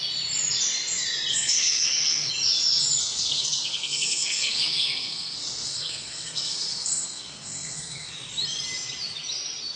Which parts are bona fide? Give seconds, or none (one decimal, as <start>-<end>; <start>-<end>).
0.0-1.3; 2.3-3.0; 8.1-9.8